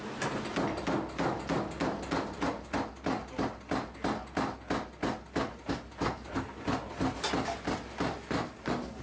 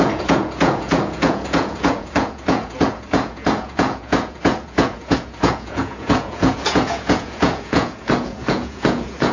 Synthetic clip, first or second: second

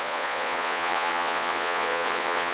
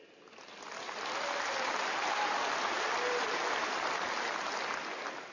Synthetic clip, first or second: first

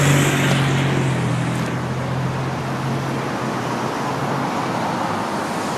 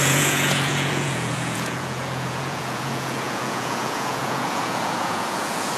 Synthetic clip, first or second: second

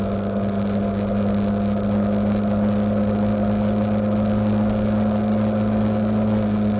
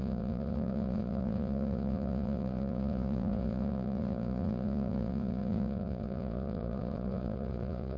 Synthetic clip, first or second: second